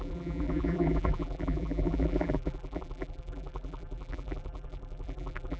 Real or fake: fake